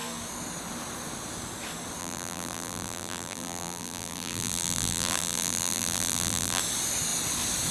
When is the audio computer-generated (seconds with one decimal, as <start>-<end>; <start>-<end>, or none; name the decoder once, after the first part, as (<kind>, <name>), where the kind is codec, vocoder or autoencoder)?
2.0-6.6 (vocoder, BigVGAN v2)

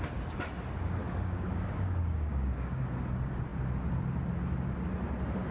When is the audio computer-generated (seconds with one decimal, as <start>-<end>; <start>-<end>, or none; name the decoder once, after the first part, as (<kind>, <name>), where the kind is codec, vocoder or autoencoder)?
1.0-2.8 (codec, DAC)

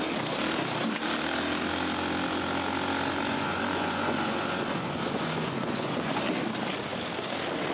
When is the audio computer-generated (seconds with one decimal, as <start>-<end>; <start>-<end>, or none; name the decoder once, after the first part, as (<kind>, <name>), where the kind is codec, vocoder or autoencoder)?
3.3-6.2 (vocoder, Vocos)